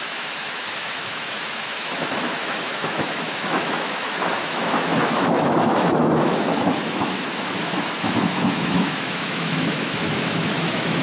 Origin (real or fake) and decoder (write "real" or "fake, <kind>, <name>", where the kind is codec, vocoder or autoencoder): fake, autoencoder, DAC-VAE